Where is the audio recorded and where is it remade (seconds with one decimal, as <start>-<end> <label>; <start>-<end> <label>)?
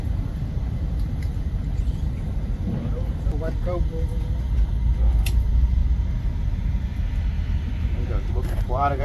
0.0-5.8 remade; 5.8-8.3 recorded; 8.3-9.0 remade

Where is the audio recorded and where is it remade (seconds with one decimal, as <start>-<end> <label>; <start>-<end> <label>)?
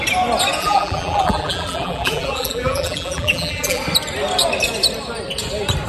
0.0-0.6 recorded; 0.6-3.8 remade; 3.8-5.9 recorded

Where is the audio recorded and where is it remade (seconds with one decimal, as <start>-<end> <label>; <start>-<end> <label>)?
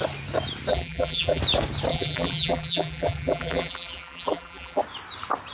0.0-0.7 recorded; 0.7-1.4 remade; 1.4-1.9 recorded; 1.9-4.8 remade; 4.8-5.5 recorded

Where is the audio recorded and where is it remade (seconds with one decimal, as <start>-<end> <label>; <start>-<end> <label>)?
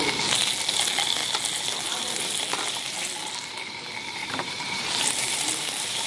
0.0-4.2 recorded; 4.2-6.1 remade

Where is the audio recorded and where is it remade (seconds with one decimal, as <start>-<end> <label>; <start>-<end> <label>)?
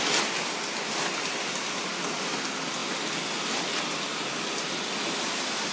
0.0-5.7 recorded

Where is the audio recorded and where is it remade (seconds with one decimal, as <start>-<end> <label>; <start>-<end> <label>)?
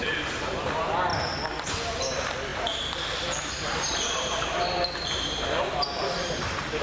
0.0-1.1 remade; 1.1-2.0 recorded; 2.0-6.8 remade